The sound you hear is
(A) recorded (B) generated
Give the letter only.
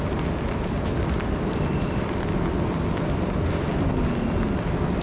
A